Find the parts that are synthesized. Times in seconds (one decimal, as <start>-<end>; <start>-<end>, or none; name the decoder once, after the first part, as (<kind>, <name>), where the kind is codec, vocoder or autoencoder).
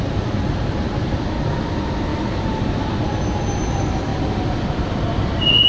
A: none